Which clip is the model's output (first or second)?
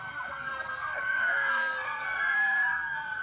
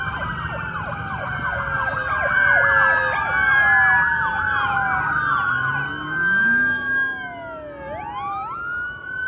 first